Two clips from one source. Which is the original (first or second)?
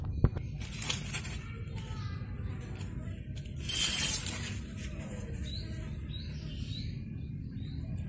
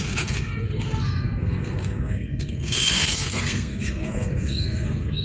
first